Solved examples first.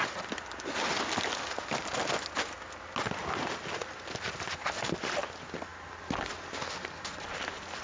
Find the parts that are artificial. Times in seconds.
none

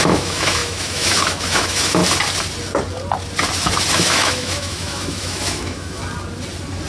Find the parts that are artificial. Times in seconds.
0.0-2.0; 3.9-6.0

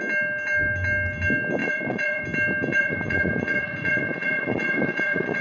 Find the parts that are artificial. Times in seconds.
1.6-2.2; 2.7-5.4

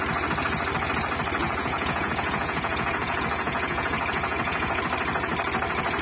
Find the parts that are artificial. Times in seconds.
1.4-4.8

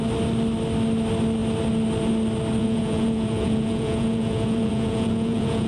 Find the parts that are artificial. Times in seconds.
2.6-5.7

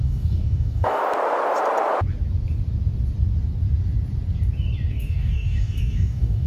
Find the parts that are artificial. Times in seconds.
0.0-1.0; 4.9-6.5

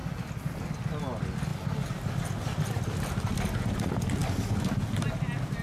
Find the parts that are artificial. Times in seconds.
none

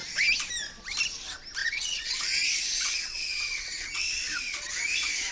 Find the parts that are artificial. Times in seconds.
1.6-4.8